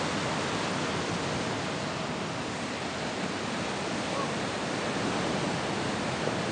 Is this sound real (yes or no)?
yes